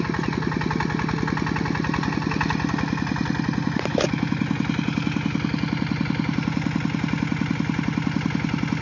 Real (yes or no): yes